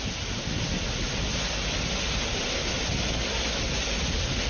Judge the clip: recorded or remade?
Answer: recorded